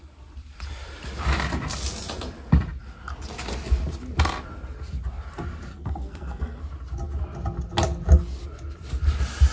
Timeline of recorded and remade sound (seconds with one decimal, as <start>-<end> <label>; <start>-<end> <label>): 0.0-5.7 recorded; 5.7-6.6 remade; 6.6-9.5 recorded